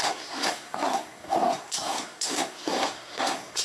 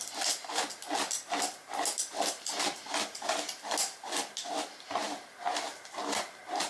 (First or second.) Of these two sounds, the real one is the second